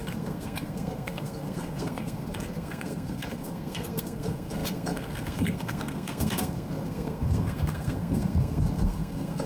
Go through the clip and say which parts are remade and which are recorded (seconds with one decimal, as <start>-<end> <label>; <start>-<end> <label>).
0.0-9.5 remade

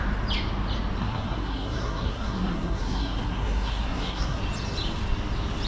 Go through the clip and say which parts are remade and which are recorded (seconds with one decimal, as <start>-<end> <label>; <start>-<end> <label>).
0.0-1.0 recorded; 1.0-4.4 remade; 4.4-5.7 recorded

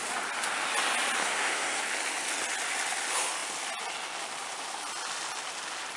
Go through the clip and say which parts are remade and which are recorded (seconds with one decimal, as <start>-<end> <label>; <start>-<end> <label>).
0.0-1.2 recorded; 1.2-1.8 remade; 1.8-6.0 recorded

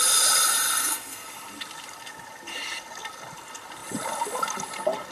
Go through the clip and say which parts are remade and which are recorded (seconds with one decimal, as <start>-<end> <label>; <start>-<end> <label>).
0.0-0.8 recorded; 0.8-1.3 remade; 1.3-5.1 recorded

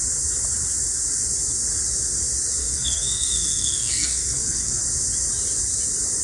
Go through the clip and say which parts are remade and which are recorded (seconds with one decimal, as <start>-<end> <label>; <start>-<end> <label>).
0.0-2.6 recorded; 2.6-4.8 remade; 4.8-6.2 recorded

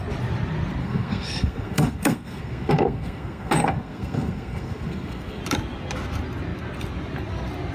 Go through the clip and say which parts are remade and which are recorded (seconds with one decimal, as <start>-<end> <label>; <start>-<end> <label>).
0.0-0.8 recorded; 0.8-5.4 remade; 5.4-7.7 recorded

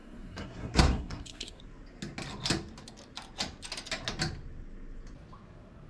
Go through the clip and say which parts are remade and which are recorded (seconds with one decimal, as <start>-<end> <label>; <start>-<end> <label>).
0.0-1.6 remade; 1.6-5.9 recorded

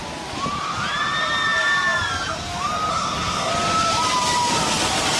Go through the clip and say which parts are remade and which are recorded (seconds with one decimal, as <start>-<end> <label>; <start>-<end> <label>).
0.0-2.9 recorded; 2.9-3.5 remade; 3.5-5.2 recorded